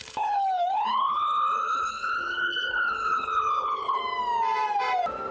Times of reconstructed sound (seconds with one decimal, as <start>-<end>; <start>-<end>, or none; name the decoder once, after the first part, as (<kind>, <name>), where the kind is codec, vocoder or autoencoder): 0.0-4.0 (codec, HILCodec)